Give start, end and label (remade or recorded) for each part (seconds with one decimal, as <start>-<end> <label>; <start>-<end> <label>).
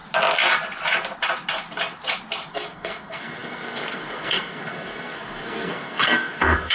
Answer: 0.0-2.5 recorded; 2.5-6.7 remade